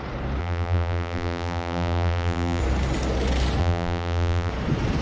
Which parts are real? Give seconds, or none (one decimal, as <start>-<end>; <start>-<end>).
0.0-0.4; 2.6-3.6; 4.5-5.0